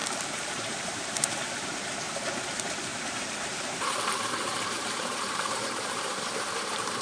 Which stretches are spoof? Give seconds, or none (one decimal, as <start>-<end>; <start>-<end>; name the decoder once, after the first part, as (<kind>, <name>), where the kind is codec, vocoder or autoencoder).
0.0-1.4 (vocoder, BigVGAN v2); 2.9-6.5